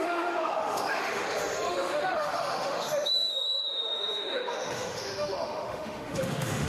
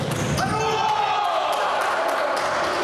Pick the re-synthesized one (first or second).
first